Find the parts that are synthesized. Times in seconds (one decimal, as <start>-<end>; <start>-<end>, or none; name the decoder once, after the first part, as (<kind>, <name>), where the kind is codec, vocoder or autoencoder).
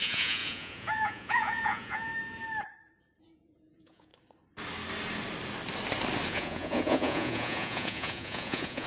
0.0-2.1 (vocoder, Vocos); 3.2-4.1; 6.3-8.9